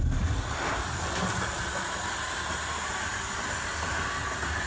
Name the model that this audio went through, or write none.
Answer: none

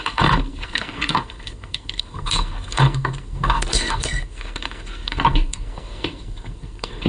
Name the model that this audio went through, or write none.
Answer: codec, SNAC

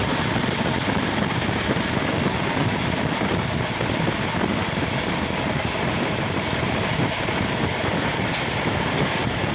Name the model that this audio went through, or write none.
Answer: none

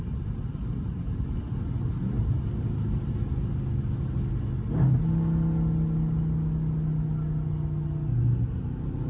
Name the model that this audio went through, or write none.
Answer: none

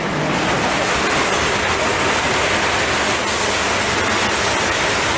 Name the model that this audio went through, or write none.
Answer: none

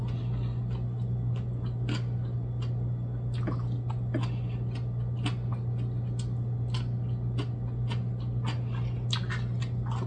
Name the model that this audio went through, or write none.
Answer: none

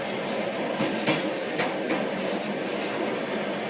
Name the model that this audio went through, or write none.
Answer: none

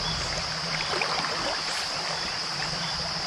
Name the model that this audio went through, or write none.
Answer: none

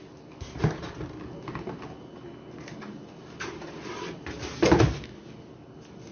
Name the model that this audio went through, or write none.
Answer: none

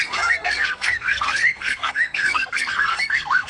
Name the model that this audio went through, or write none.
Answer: codec, SNAC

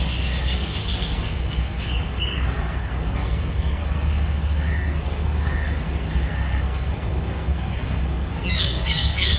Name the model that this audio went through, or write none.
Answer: codec, SNAC